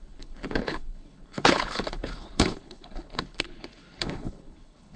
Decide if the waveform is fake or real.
fake